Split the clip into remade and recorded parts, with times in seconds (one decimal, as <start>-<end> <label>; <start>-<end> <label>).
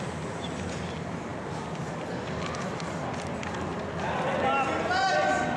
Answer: 0.0-5.6 recorded